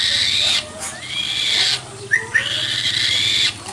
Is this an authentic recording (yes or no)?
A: yes